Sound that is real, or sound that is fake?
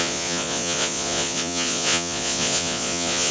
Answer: fake